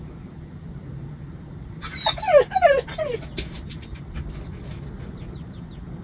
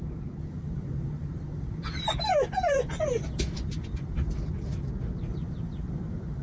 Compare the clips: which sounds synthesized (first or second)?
first